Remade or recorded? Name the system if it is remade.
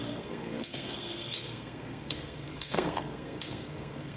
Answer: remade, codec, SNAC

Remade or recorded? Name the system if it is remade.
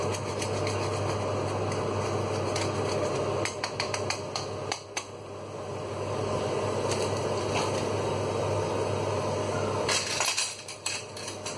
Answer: recorded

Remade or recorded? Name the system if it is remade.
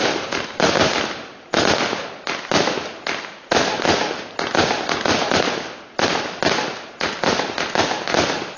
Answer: recorded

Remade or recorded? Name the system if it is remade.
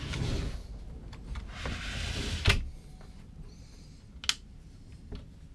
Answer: recorded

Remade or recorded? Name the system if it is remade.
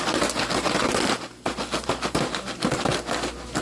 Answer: recorded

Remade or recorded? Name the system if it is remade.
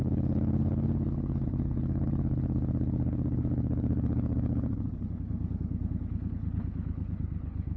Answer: remade, codec, HILCodec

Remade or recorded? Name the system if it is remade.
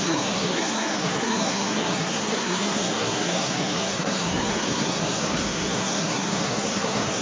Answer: remade, codec, SNAC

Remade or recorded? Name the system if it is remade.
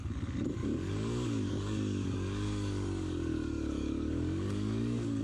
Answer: remade, codec, DAC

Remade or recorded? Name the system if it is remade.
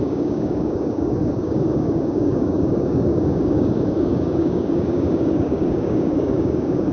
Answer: remade, codec, DAC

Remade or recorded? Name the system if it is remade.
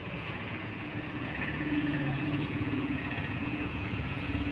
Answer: remade, vocoder, Vocos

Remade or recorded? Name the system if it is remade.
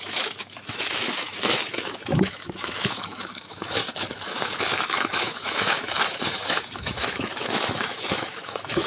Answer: remade, autoencoder, DAC-VAE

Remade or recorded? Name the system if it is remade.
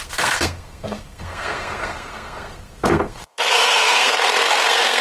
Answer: remade, codec, SNAC